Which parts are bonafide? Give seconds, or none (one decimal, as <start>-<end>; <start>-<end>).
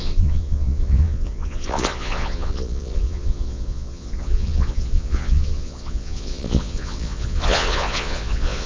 none